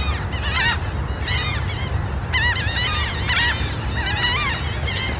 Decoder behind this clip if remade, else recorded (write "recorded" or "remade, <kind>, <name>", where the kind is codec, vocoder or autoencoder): recorded